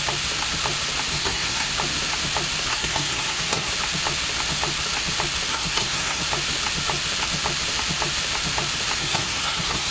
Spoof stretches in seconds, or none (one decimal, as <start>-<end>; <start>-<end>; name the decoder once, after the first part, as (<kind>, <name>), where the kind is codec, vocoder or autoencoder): 1.1-1.7 (codec, SNAC); 2.7-3.7; 5.5-6.2; 9.0-9.9